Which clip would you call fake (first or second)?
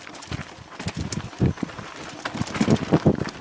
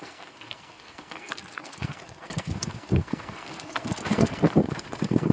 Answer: second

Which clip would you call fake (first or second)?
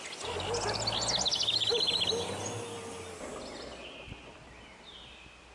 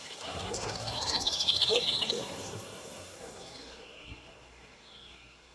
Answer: second